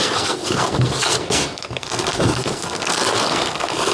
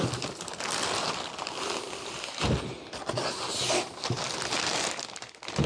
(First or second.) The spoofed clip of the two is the first